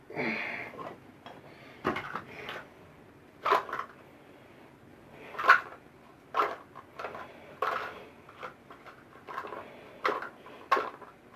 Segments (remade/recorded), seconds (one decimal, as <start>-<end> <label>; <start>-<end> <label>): 0.0-4.9 recorded; 4.9-5.5 remade; 5.5-11.4 recorded